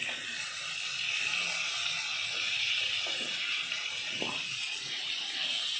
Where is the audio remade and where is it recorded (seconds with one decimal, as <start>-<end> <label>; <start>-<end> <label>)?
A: 0.0-2.2 recorded; 2.2-5.8 remade